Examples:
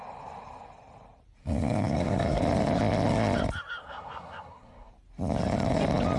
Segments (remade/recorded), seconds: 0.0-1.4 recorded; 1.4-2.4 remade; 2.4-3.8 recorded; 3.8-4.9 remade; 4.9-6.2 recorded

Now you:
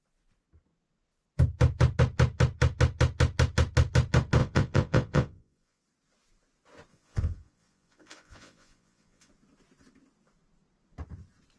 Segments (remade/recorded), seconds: 0.0-4.4 recorded; 4.4-5.8 remade; 5.8-6.9 recorded; 6.9-9.3 remade; 9.3-11.6 recorded

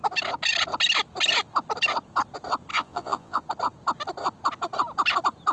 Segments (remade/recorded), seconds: 0.0-2.7 recorded; 2.7-3.4 remade; 3.4-5.5 recorded